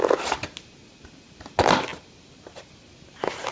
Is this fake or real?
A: real